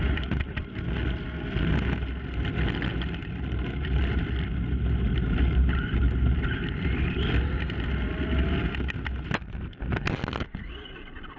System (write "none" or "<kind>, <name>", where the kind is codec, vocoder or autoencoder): none